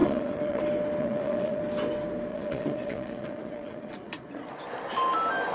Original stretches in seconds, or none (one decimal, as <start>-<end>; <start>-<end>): 0.6-1.0; 1.6-2.3; 4.6-5.5